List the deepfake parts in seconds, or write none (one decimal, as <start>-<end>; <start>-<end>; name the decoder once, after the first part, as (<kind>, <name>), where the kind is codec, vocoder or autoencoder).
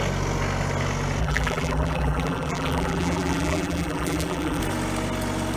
1.2-4.6 (vocoder, BigVGAN v2)